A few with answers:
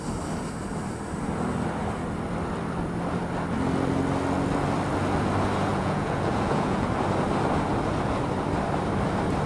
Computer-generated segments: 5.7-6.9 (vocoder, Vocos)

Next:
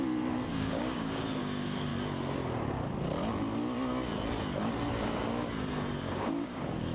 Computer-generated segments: 0.5-1.9 (codec, DAC); 6.0-6.9

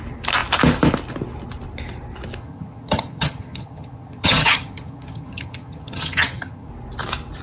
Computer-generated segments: 2.4-6.7 (vocoder, HiFi-GAN)

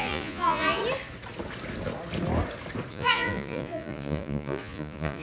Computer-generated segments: 0.0-0.8 (vocoder, Vocos); 2.9-5.2

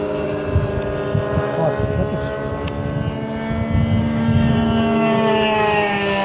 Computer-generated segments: 0.0-0.7 (codec, DAC); 4.0-6.2

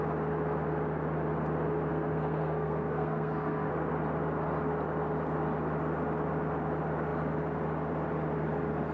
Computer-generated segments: 1.9-3.7 (codec, SNAC)

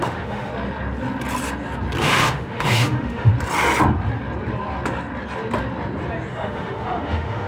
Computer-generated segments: 0.0-0.5 (autoencoder, DAC-VAE); 2.0-3.3; 6.3-7.5

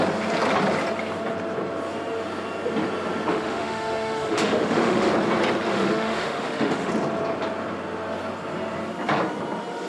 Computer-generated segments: 3.3-5.1 (autoencoder, DAC-VAE); 5.7-6.9